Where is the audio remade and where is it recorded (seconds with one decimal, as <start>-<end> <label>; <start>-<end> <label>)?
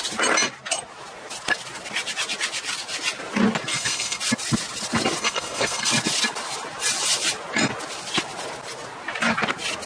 0.0-3.7 recorded; 3.7-4.2 remade; 4.2-5.2 recorded; 5.2-5.9 remade; 5.9-9.9 recorded